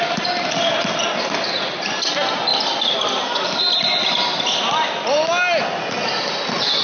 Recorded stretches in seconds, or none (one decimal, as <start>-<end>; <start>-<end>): 0.0-6.8